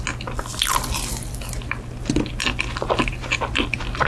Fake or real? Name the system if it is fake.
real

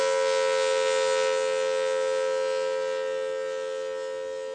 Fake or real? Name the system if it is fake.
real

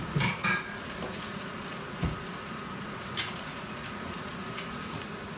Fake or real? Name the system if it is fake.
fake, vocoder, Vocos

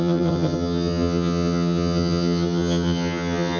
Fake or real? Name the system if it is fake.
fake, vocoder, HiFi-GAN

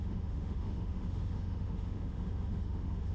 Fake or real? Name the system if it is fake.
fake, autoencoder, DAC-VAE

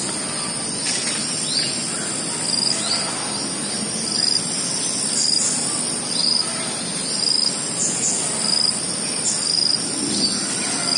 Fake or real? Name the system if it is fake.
real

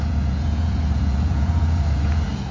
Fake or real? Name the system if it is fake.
fake, vocoder, Vocos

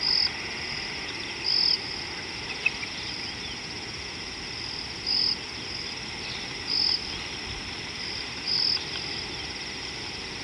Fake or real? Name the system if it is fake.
real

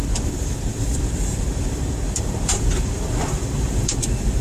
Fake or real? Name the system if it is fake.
fake, vocoder, BigVGAN v2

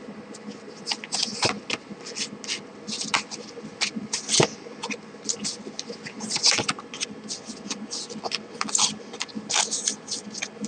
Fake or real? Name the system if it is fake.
real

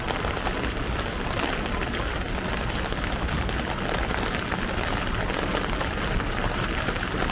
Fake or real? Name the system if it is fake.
real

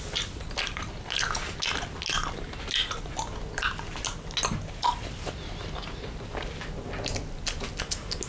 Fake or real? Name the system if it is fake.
real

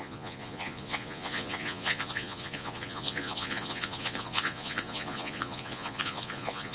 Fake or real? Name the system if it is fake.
fake, vocoder, Vocos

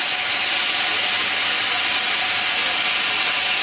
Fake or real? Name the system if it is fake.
real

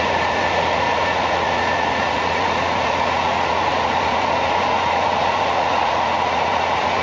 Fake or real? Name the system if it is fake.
fake, vocoder, Vocos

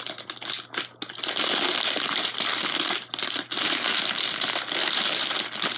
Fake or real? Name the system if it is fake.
real